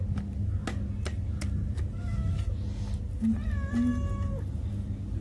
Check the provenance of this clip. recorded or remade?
recorded